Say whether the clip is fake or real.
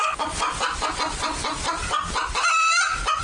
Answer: real